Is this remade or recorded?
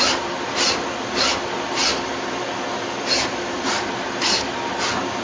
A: recorded